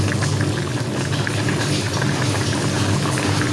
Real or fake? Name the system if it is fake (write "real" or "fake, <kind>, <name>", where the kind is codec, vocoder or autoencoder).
real